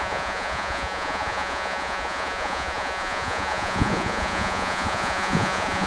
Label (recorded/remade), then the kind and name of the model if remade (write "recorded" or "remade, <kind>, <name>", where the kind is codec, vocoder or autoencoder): remade, vocoder, Vocos